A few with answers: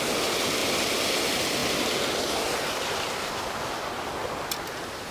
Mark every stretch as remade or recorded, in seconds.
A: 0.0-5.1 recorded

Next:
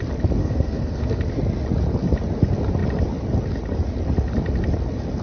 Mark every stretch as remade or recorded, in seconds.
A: 0.0-0.4 recorded; 0.4-1.2 remade; 1.2-5.2 recorded